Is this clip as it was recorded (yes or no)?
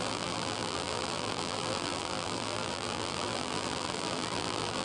no